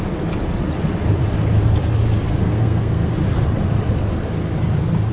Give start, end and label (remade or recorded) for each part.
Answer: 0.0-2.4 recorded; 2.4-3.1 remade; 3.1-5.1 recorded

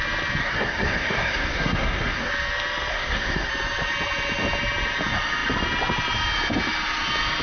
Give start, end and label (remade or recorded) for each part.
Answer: 0.0-0.4 recorded; 0.4-2.3 remade; 2.3-2.9 recorded; 2.9-3.5 remade; 3.5-7.4 recorded

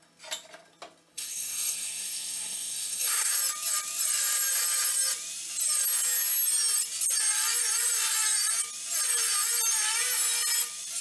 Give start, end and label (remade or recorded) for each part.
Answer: 0.0-1.1 recorded; 1.1-3.3 remade; 3.3-11.0 recorded